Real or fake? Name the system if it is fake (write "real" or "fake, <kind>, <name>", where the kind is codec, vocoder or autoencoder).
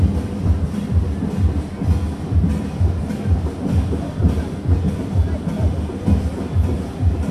real